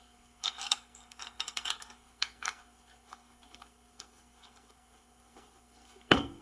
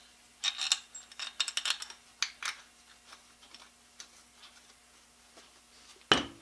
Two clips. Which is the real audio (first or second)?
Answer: second